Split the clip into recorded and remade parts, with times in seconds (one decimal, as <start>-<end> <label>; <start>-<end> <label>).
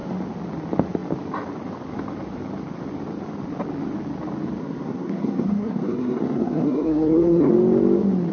0.0-4.6 recorded; 4.6-7.5 remade; 7.5-8.3 recorded